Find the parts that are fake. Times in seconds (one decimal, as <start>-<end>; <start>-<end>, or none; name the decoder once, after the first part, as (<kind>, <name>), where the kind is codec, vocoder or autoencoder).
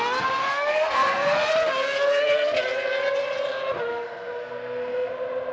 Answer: 0.4-1.5 (codec, SNAC); 3.9-5.1